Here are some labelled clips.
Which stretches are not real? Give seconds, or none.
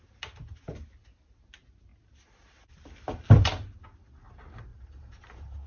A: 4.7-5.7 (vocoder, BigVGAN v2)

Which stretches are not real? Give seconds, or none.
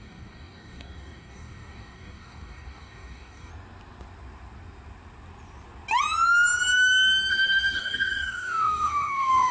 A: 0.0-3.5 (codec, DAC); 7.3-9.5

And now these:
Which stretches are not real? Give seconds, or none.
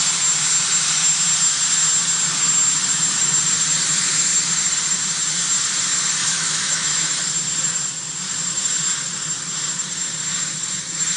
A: 6.2-7.2 (autoencoder, DAC-VAE)